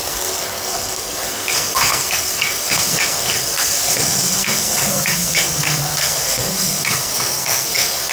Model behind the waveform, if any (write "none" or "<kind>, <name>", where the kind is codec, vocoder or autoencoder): codec, SNAC